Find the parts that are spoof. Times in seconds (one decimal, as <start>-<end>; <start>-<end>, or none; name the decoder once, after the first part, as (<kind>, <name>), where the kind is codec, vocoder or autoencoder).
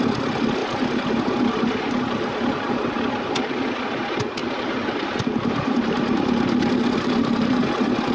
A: 4.4-7.6 (vocoder, BigVGAN v2)